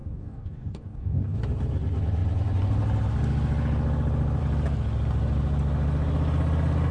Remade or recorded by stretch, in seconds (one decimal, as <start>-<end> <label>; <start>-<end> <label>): 0.0-1.4 remade; 1.4-6.9 recorded